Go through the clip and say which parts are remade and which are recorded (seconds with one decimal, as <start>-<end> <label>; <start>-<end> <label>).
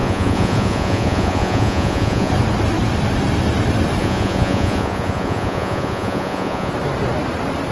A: 0.0-2.3 remade; 2.3-4.0 recorded; 4.0-6.7 remade; 6.7-7.7 recorded